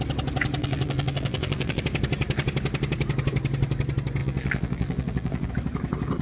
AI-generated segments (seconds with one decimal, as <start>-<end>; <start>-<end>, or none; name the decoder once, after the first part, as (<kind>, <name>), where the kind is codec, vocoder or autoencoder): 0.6-1.8 (vocoder, BigVGAN v2); 4.2-5.5